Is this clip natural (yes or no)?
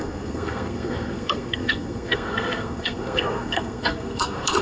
no